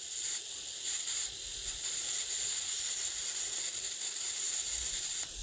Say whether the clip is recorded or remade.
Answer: recorded